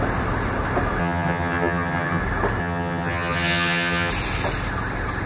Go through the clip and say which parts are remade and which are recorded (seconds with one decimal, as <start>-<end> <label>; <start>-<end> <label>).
0.0-1.0 recorded; 1.0-2.2 remade; 2.2-2.6 recorded; 2.6-4.1 remade; 4.1-5.3 recorded